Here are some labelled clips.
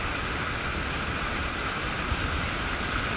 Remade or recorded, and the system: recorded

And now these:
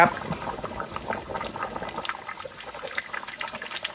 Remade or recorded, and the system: remade, vocoder, BigVGAN v2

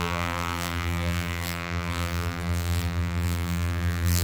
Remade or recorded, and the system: remade, vocoder, BigVGAN v2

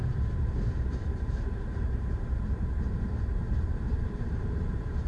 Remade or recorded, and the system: remade, vocoder, BigVGAN v2